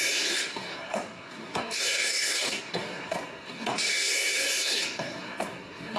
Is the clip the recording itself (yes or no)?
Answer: no